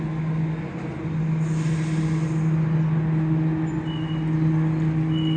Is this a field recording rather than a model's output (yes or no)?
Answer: yes